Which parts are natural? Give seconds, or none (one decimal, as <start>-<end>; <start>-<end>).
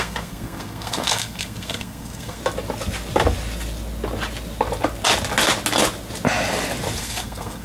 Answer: 2.4-7.0